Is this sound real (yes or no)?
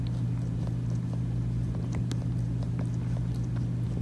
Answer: yes